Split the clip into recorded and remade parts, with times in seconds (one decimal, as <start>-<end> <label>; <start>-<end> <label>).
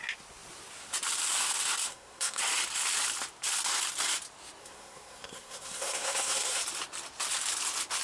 0.0-1.9 recorded; 1.9-2.4 remade; 2.4-4.6 recorded; 4.6-6.6 remade; 6.6-8.0 recorded